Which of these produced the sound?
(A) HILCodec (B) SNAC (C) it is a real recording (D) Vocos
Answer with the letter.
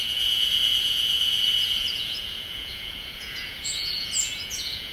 D